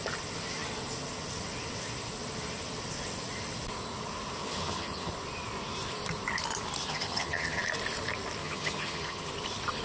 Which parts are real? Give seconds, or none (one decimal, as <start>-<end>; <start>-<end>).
0.0-4.4; 5.1-6.8; 7.6-8.4; 9.3-9.8